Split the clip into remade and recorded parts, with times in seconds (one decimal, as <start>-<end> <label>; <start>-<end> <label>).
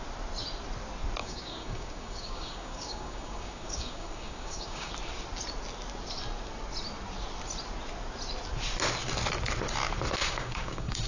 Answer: 0.0-1.2 recorded; 1.2-4.9 remade; 4.9-10.2 recorded; 10.2-11.1 remade